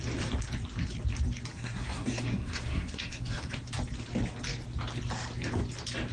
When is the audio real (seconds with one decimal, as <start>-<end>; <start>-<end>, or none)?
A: 0.0-1.5; 3.5-6.1